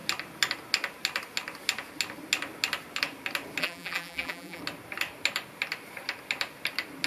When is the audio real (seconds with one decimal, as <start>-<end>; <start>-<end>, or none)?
0.0-3.6; 4.6-7.1